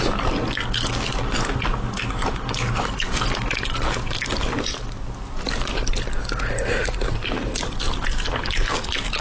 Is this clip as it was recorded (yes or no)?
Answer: yes